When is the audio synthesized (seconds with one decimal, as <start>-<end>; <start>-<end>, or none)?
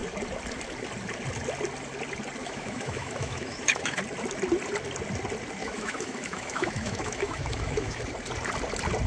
2.4-4.0; 5.6-8.0